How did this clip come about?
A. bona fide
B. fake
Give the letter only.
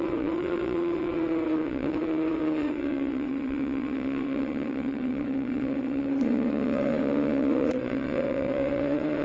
B